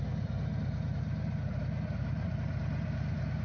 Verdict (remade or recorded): recorded